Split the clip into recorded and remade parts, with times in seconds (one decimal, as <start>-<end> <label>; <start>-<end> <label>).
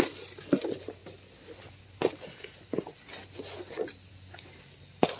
0.0-5.2 recorded